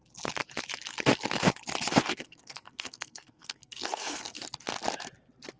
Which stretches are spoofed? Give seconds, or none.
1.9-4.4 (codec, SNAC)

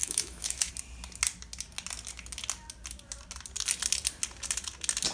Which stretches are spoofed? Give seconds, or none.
0.0-0.7 (autoencoder, DAC-VAE)

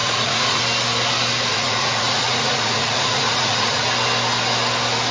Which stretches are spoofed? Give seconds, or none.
0.0-0.6 (vocoder, Vocos); 1.5-3.9